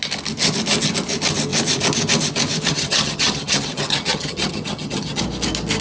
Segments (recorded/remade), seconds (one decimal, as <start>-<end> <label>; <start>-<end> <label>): 0.0-2.7 recorded; 2.7-5.2 remade; 5.2-5.8 recorded